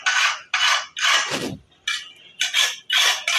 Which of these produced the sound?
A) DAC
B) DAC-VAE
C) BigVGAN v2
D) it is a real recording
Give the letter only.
D